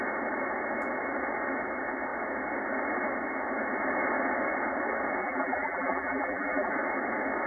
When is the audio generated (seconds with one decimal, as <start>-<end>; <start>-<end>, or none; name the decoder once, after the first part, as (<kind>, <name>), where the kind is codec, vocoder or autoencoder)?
5.2-6.7 (vocoder, BigVGAN v2)